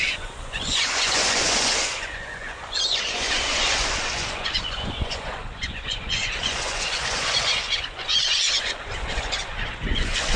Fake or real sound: fake